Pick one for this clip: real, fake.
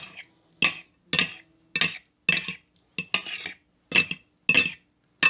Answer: real